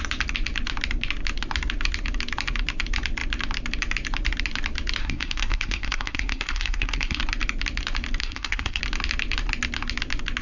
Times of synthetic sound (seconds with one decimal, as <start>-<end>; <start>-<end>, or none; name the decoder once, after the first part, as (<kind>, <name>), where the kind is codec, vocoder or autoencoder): 5.0-7.2 (codec, SNAC); 8.2-8.8